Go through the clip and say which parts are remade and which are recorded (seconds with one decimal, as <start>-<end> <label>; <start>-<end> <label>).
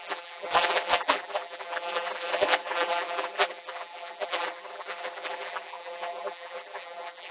0.0-7.3 remade